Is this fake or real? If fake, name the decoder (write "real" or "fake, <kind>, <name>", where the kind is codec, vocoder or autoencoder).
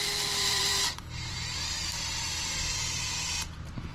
fake, vocoder, BigVGAN v2